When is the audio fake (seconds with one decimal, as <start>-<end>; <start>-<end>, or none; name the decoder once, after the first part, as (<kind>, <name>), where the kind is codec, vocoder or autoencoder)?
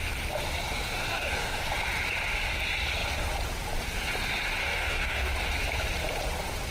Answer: 1.1-1.6 (codec, DAC); 4.6-5.3